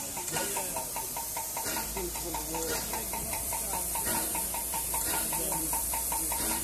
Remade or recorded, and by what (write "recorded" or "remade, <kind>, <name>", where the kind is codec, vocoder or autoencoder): remade, vocoder, BigVGAN v2